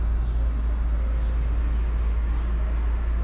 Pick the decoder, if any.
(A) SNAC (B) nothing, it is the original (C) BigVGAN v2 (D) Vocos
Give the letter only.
B